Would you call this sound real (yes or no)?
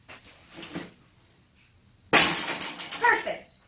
yes